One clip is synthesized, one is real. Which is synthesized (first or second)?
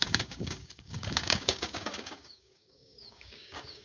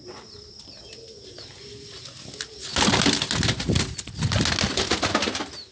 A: first